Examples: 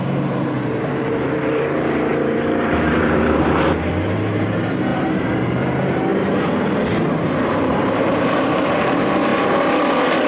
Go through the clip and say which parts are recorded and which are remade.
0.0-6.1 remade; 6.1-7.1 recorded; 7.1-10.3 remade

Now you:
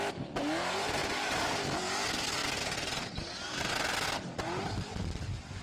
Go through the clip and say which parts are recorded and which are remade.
0.0-2.4 remade; 2.4-4.8 recorded; 4.8-5.6 remade

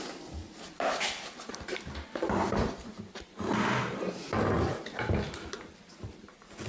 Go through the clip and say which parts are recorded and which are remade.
0.0-0.4 recorded; 0.4-1.1 remade; 1.1-1.5 recorded; 1.5-3.5 remade; 3.5-6.7 recorded

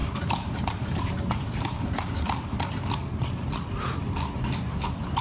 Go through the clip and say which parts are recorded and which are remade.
0.0-2.6 remade; 2.6-5.2 recorded

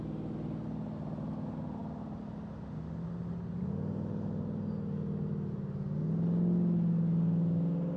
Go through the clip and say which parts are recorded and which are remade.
0.0-8.0 recorded

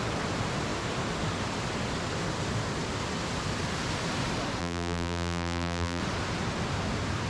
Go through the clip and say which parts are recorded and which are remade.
0.0-4.6 recorded; 4.6-6.0 remade; 6.0-7.3 recorded